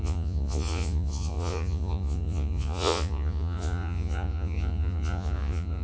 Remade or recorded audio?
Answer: remade